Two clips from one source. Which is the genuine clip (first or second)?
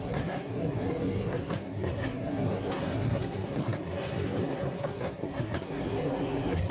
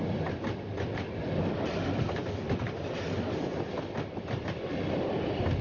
second